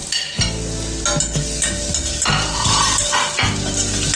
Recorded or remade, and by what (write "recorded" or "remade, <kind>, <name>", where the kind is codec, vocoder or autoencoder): recorded